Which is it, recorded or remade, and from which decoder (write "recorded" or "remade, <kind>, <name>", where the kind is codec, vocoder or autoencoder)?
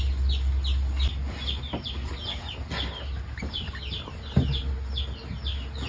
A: recorded